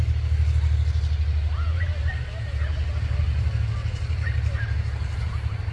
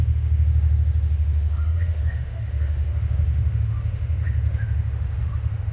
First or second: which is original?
first